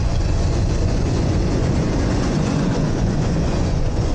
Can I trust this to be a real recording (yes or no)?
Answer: no